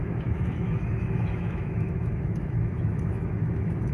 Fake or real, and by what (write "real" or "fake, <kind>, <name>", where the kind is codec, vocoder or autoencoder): fake, autoencoder, DAC-VAE